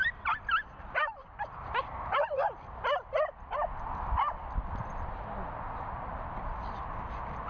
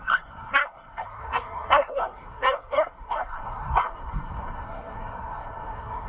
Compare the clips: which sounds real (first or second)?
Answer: first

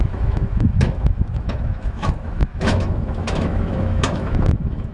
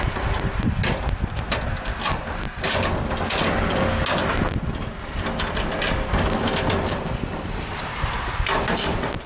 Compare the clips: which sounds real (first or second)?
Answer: second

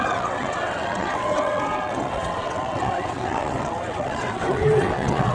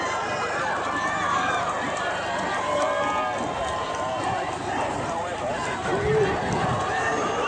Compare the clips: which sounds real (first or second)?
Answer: second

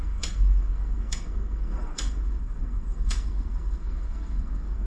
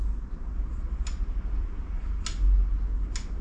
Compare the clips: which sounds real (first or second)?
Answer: second